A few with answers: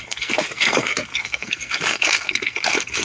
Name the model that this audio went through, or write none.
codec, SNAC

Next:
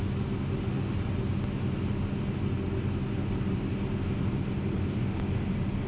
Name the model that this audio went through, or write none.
none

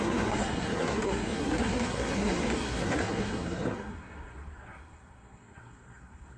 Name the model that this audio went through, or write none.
codec, SNAC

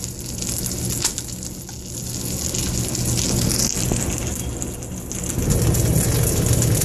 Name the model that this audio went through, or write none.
none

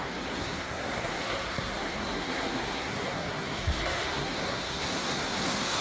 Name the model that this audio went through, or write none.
codec, SNAC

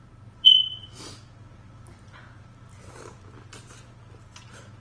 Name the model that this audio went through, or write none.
none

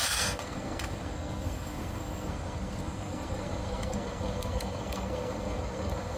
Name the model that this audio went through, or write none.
codec, SNAC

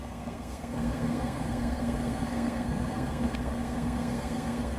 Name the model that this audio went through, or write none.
codec, SNAC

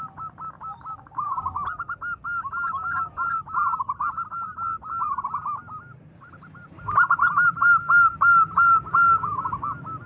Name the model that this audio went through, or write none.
none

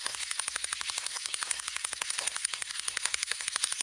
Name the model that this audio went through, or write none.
codec, SNAC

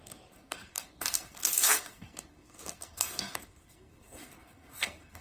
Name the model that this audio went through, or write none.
codec, SNAC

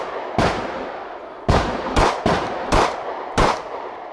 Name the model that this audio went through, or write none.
none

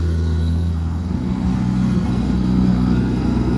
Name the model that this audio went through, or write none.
codec, SNAC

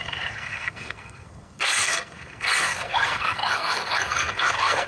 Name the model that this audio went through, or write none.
codec, SNAC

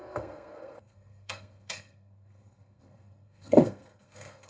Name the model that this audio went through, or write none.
codec, SNAC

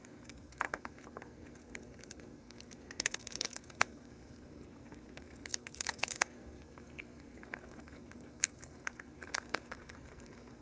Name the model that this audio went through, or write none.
codec, SNAC